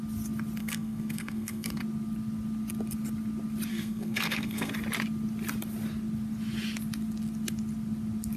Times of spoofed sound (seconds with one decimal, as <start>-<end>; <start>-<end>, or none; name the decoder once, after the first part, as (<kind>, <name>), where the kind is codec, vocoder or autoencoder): 0.6-1.8 (codec, SNAC); 3.7-4.7